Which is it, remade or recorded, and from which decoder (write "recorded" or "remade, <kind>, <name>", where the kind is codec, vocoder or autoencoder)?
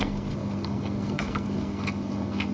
remade, codec, SNAC